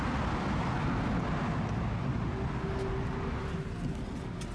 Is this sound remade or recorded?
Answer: recorded